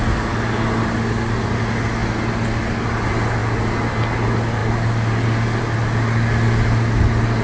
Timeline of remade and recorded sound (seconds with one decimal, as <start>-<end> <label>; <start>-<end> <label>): 0.0-7.4 recorded